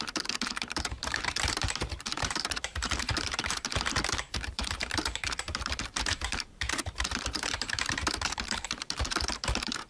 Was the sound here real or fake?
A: fake